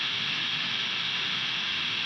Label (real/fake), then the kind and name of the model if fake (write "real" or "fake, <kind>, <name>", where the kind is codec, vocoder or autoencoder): fake, autoencoder, DAC-VAE